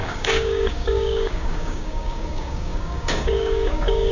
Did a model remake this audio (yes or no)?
yes